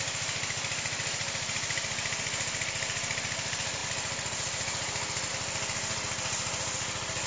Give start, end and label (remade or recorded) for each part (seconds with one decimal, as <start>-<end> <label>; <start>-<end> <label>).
0.0-7.3 recorded